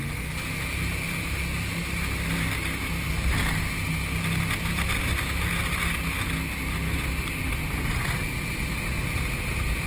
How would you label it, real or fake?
real